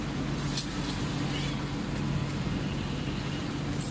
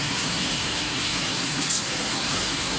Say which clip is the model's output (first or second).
second